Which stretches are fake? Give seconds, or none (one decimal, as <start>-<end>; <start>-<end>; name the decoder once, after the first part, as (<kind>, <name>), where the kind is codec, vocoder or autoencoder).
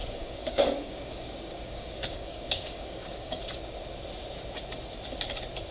0.0-3.4 (codec, DAC)